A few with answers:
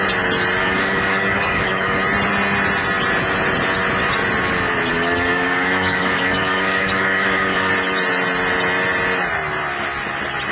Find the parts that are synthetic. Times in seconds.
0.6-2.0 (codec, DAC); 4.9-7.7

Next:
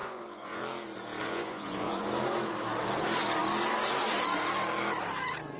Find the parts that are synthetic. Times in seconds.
0.0-0.6 (vocoder, Vocos); 1.2-2.1

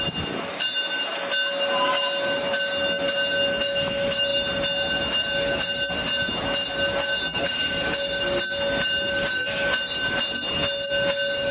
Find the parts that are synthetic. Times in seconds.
none

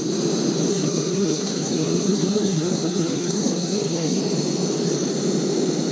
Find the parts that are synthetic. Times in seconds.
0.7-4.2 (codec, SNAC)

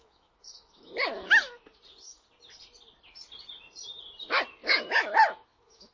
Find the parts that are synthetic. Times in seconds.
0.0-1.8 (autoencoder, DAC-VAE); 4.6-5.9

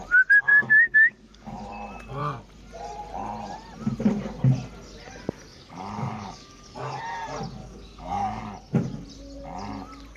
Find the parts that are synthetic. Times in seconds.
0.5-1.7 (codec, DAC); 5.5-7.0; 7.6-8.4